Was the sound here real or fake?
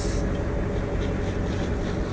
real